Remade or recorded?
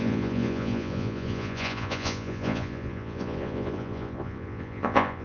remade